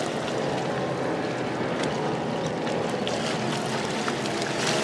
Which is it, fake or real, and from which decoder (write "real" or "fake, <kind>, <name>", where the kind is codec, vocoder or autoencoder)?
real